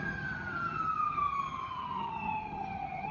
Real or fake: fake